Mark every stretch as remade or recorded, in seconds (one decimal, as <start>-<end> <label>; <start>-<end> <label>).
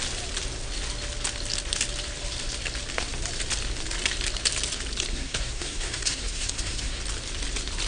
0.0-5.1 recorded; 5.1-7.0 remade; 7.0-7.9 recorded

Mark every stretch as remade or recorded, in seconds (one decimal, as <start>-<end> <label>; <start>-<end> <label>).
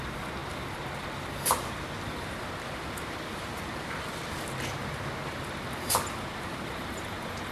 0.0-7.5 recorded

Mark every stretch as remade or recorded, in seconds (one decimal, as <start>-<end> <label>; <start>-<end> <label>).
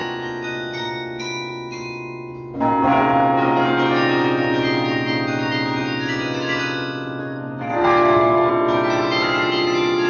0.0-7.2 recorded; 7.2-8.5 remade; 8.5-10.1 recorded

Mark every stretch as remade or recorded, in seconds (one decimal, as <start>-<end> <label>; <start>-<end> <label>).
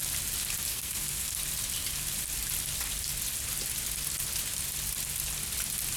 0.0-0.7 recorded; 0.7-1.4 remade; 1.4-6.0 recorded